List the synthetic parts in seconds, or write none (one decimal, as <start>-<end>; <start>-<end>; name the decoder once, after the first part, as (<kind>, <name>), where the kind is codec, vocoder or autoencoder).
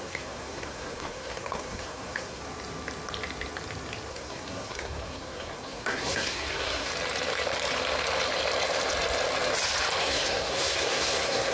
0.0-2.4 (codec, SNAC); 4.1-6.9; 10.0-11.5